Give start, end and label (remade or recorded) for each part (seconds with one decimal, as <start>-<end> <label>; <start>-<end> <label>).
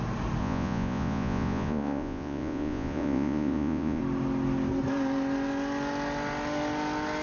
0.0-0.4 recorded; 0.4-4.0 remade; 4.0-7.2 recorded